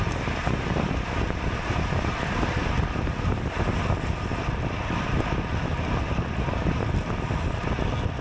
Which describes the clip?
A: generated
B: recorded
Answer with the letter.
B